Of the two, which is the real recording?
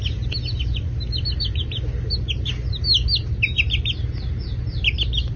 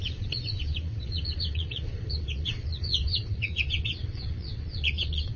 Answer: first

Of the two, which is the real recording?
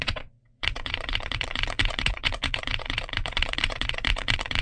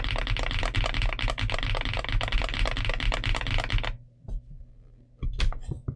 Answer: second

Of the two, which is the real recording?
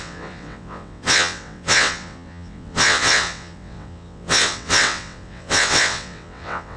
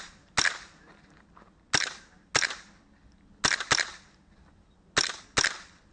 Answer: second